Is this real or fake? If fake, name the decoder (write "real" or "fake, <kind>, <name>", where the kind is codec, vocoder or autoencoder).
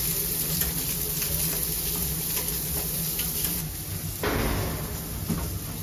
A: real